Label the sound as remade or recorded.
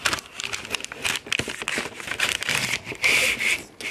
remade